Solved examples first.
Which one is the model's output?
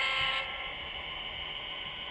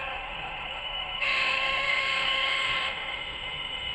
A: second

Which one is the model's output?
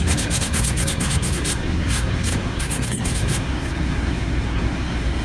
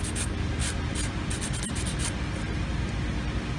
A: first